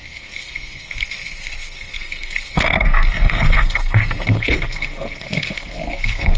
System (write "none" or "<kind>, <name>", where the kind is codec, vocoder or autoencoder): codec, SNAC